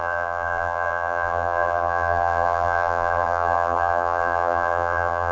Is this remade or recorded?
remade